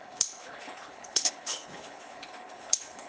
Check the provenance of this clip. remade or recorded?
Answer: remade